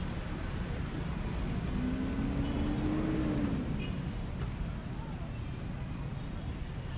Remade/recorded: recorded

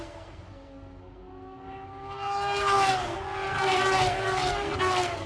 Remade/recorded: remade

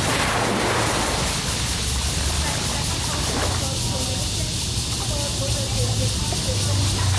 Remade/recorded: recorded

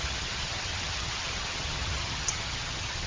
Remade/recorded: remade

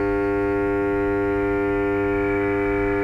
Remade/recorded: remade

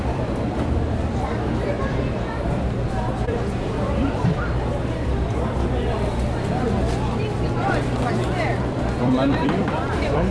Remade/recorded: remade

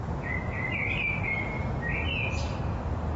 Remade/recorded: recorded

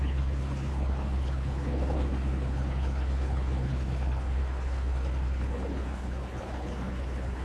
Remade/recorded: remade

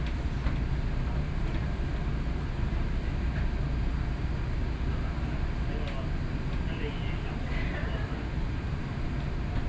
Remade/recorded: recorded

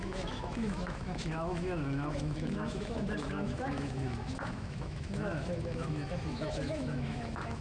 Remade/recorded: remade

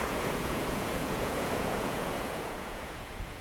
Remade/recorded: remade